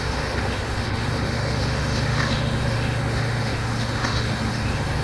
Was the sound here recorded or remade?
remade